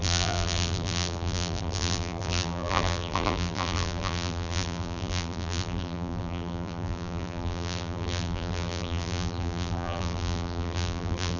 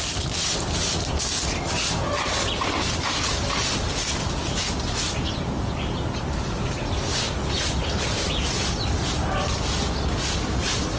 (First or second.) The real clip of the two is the second